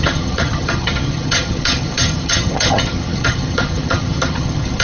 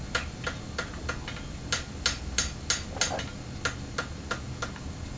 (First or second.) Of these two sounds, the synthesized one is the first